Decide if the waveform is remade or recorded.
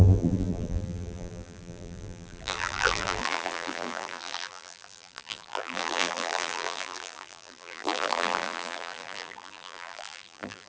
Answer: remade